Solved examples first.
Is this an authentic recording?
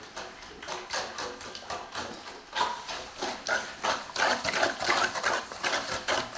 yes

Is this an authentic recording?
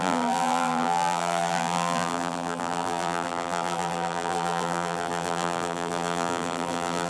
no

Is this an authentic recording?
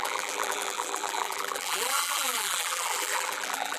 no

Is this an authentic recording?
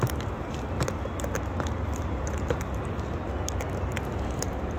yes